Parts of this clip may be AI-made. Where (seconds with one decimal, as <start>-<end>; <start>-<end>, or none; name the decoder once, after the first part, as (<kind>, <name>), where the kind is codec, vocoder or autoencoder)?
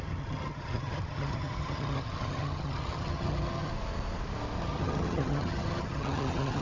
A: 0.0-3.7 (vocoder, HiFi-GAN); 4.6-6.6